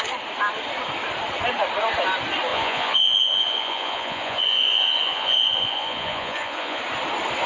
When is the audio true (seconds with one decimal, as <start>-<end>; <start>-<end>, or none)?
0.0-2.5; 6.8-7.5